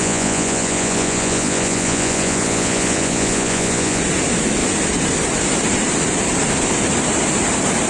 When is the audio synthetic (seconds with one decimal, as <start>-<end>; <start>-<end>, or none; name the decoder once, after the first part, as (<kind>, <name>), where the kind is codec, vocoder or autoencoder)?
0.0-4.0 (vocoder, Vocos)